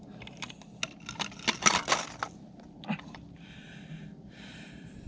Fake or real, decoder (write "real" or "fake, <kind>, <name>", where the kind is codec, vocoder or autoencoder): real